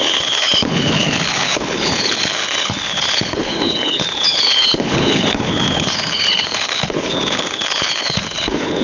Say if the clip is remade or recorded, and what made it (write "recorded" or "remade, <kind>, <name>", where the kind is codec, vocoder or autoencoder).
remade, codec, HILCodec